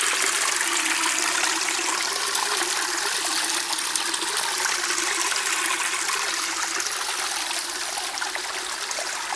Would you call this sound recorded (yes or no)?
yes